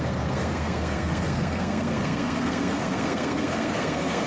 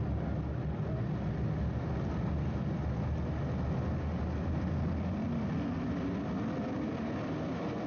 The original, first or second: second